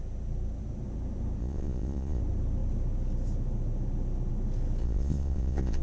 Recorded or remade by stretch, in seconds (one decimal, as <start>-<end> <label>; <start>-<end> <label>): 0.0-1.4 recorded; 1.4-2.2 remade; 2.2-4.8 recorded; 4.8-5.8 remade